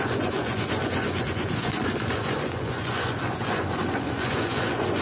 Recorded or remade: remade